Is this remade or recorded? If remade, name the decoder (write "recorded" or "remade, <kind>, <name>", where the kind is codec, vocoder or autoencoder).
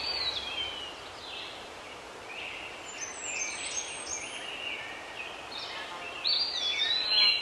recorded